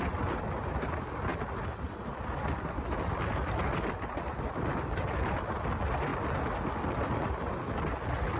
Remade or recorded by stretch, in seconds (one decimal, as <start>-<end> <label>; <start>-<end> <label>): 0.0-8.4 recorded